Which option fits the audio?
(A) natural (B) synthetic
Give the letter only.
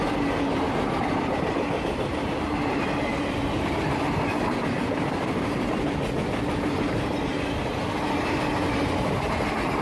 A